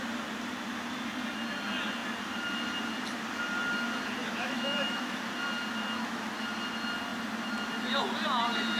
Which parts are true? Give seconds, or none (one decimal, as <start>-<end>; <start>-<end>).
0.0-4.2; 5.2-8.8